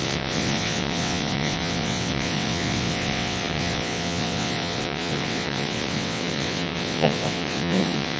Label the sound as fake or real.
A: fake